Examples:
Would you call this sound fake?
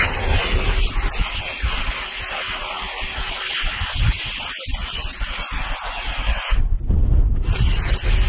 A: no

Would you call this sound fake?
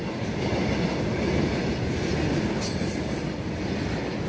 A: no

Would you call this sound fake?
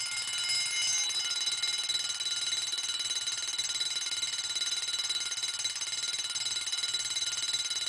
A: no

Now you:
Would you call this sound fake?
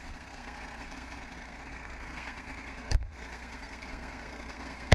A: yes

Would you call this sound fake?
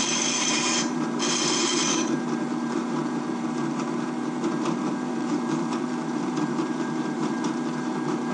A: yes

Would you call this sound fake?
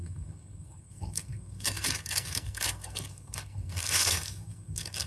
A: yes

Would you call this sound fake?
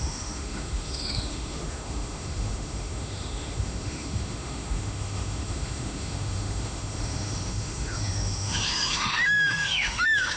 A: yes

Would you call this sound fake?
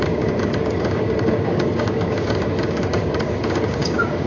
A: yes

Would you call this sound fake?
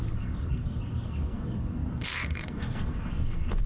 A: yes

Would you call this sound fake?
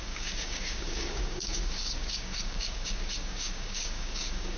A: yes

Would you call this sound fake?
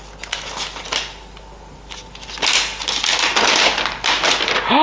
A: no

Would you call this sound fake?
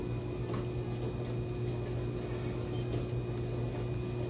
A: no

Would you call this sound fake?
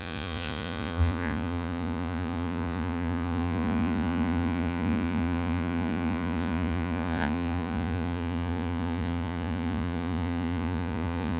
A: yes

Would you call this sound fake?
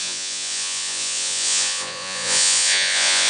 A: yes